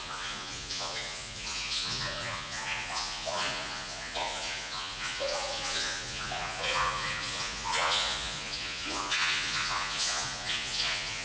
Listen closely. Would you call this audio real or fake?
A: fake